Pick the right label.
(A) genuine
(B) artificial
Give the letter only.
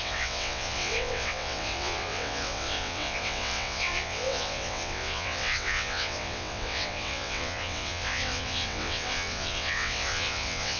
B